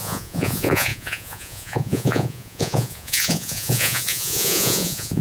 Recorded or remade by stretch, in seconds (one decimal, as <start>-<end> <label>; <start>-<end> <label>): 0.0-5.2 remade